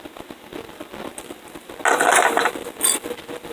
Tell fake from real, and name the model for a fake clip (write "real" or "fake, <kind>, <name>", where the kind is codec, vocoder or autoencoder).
real